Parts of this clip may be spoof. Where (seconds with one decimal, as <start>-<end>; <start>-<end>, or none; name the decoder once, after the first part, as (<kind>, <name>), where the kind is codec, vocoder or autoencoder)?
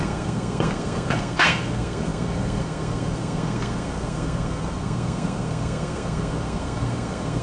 0.0-7.4 (codec, SNAC)